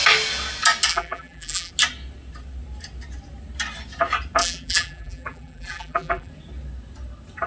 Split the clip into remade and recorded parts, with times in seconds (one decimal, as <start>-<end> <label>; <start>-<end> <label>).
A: 0.0-0.9 recorded; 0.9-1.7 remade; 1.7-4.4 recorded; 4.4-6.3 remade; 6.3-7.5 recorded

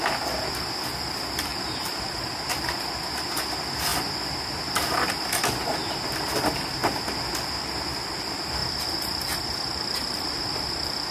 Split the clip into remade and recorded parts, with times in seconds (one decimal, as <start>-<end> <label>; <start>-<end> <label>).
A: 0.0-1.5 recorded; 1.5-2.2 remade; 2.2-8.6 recorded; 8.6-11.1 remade

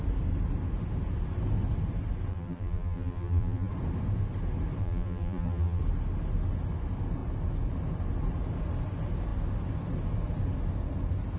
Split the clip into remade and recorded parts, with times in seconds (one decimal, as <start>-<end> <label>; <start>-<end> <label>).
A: 0.0-2.3 recorded; 2.3-3.7 remade; 3.7-4.8 recorded; 4.8-5.8 remade; 5.8-11.4 recorded

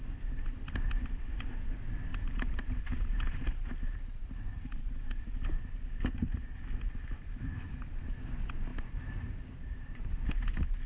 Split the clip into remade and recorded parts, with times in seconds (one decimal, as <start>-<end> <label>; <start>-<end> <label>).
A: 0.0-2.1 recorded; 2.1-2.8 remade; 2.8-8.7 recorded; 8.7-10.3 remade; 10.3-10.9 recorded